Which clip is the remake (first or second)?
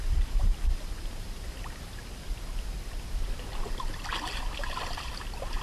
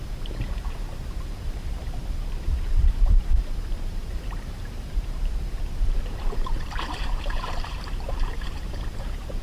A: second